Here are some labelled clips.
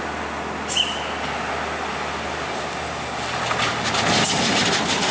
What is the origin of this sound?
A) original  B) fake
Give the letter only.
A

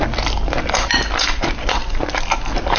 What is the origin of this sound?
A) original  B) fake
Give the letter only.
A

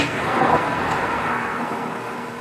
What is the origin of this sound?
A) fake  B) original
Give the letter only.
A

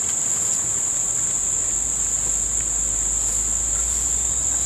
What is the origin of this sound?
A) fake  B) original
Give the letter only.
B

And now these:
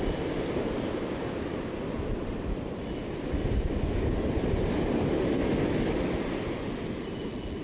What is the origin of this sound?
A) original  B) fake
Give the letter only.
A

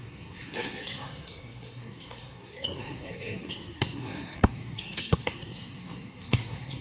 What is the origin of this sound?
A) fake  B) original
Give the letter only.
A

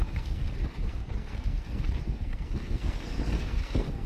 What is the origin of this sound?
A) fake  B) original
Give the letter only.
A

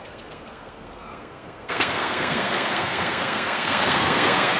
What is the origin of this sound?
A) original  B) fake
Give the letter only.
B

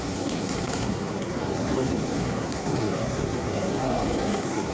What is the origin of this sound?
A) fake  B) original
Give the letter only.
A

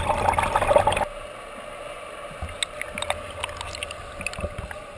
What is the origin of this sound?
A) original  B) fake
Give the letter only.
A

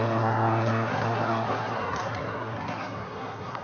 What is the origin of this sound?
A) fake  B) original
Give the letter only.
A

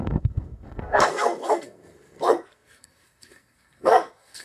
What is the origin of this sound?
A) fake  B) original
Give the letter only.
A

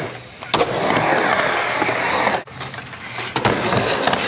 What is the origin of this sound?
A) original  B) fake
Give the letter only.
A